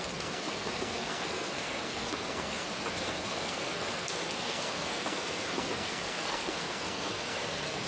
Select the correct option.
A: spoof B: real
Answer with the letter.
A